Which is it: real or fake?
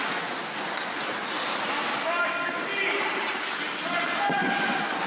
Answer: real